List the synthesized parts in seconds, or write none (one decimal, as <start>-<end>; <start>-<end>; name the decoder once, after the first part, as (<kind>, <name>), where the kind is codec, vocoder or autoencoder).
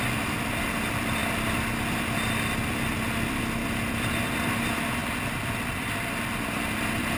none